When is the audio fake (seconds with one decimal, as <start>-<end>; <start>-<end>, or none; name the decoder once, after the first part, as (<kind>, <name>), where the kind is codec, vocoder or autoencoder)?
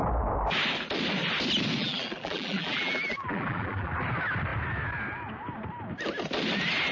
1.8-3.9 (vocoder, BigVGAN v2)